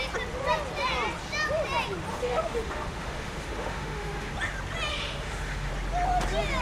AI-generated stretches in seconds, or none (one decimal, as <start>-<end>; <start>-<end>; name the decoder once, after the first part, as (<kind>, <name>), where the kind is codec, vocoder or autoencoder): 2.1-4.3 (autoencoder, DAC-VAE); 4.9-5.7